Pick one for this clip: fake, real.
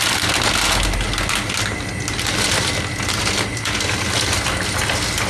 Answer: real